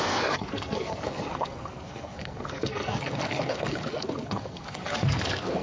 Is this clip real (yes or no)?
no